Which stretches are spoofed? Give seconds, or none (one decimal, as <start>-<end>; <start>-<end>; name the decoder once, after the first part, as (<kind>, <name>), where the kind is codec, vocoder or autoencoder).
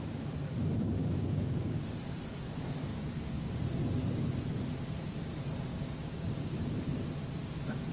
1.0-1.9 (codec, DAC); 2.9-3.5; 5.7-6.6